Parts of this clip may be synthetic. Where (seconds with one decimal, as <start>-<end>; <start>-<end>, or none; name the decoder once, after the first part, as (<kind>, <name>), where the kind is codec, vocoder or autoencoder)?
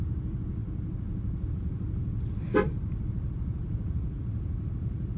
none